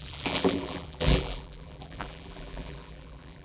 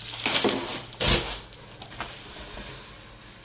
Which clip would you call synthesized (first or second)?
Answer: first